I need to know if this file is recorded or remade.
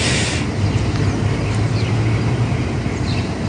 recorded